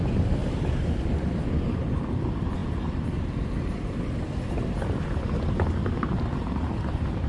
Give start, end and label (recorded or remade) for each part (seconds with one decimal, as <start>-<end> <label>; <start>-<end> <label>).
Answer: 0.0-0.4 recorded; 0.4-1.4 remade; 1.4-7.3 recorded